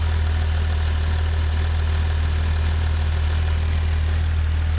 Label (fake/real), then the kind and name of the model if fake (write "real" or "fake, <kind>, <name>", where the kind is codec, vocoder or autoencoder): real